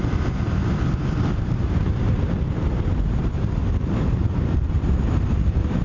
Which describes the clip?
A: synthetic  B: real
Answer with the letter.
A